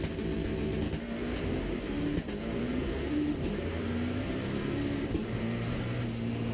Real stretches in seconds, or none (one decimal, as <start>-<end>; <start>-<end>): 0.0-2.4; 6.0-6.5